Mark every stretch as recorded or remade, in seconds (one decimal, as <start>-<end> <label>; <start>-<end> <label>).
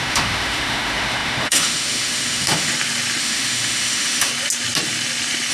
0.0-2.7 remade; 2.7-3.2 recorded; 3.2-4.3 remade; 4.3-5.5 recorded